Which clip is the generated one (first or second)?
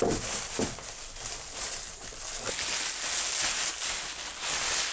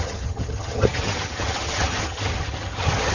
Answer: second